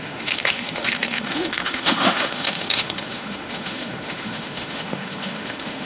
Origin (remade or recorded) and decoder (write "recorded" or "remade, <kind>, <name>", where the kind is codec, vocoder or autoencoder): remade, autoencoder, DAC-VAE